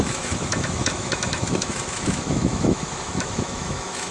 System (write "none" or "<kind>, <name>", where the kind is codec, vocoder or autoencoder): autoencoder, DAC-VAE